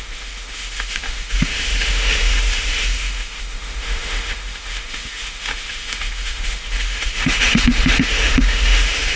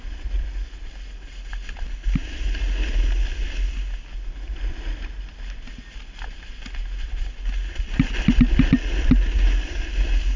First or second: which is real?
second